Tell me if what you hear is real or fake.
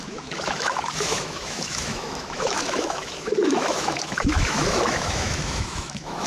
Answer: fake